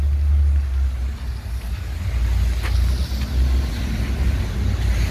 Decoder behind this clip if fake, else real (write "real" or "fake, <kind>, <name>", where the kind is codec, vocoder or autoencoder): real